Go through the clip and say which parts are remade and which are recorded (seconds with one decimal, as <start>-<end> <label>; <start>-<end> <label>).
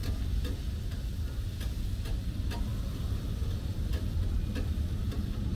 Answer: 0.0-1.4 remade; 1.4-2.7 recorded; 2.7-5.0 remade; 5.0-5.6 recorded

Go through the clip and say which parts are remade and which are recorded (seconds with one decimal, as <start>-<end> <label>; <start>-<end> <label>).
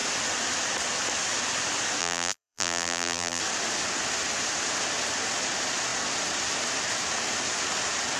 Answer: 0.0-2.0 recorded; 2.0-3.4 remade; 3.4-8.2 recorded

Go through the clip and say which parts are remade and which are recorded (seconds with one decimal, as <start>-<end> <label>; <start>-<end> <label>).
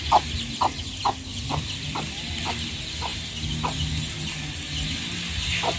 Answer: 0.0-1.3 recorded; 1.3-2.5 remade; 2.5-5.8 recorded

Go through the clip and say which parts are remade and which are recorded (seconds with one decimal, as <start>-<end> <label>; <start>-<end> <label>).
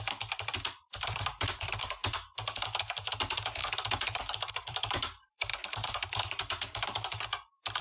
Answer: 0.0-2.0 remade; 2.0-2.6 recorded; 2.6-3.6 remade; 3.6-4.5 recorded; 4.5-5.5 remade; 5.5-6.2 recorded; 6.2-7.8 remade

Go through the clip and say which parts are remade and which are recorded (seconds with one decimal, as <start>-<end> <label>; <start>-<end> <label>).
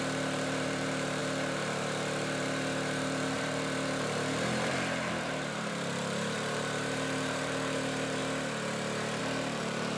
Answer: 0.0-8.2 remade; 8.2-9.2 recorded; 9.2-10.0 remade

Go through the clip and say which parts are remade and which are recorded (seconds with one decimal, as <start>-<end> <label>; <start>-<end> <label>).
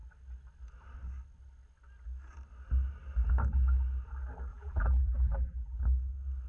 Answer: 0.0-4.5 recorded; 4.5-5.8 remade; 5.8-6.5 recorded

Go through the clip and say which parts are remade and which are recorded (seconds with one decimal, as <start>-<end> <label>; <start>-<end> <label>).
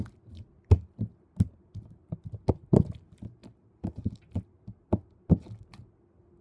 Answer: 0.0-6.4 recorded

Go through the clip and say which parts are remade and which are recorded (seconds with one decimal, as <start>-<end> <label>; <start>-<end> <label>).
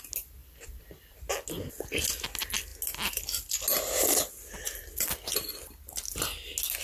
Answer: 0.0-0.4 recorded; 0.4-1.2 remade; 1.2-6.8 recorded